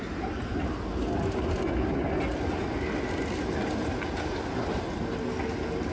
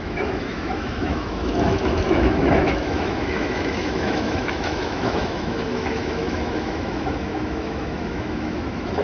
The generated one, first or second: second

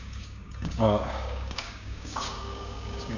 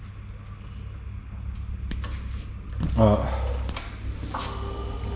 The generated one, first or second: first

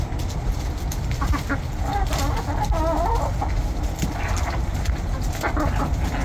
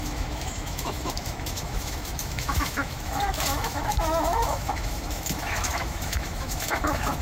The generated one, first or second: second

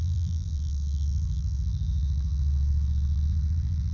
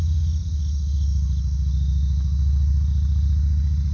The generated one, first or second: first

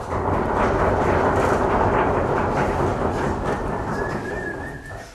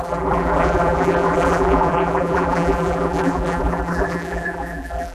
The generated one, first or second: second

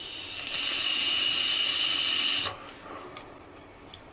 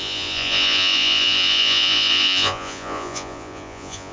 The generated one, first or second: second